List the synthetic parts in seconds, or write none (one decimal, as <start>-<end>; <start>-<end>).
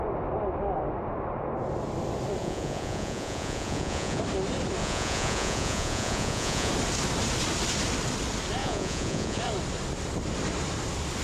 2.4-4.2; 4.8-6.7; 8.6-9.4